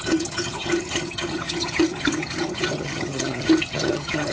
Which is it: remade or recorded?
remade